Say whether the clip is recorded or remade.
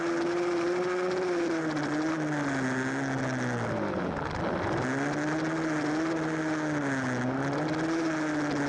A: recorded